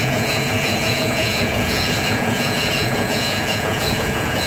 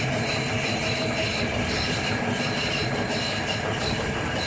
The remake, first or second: first